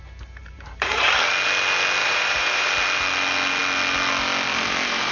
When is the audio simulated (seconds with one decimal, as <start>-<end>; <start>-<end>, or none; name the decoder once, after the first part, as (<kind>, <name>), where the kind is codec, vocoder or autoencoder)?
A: 0.4-1.3 (vocoder, BigVGAN v2); 2.0-2.7; 4.5-5.1